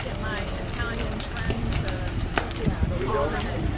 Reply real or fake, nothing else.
fake